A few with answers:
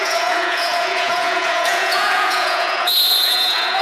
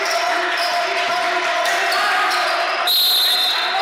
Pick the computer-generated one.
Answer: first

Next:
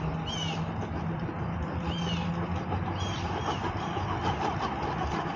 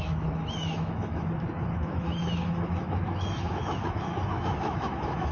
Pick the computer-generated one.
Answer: second